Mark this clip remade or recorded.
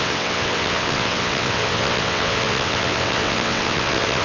remade